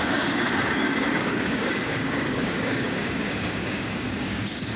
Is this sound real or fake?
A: fake